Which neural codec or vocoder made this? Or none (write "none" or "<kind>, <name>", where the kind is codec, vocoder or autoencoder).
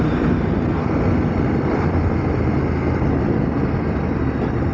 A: none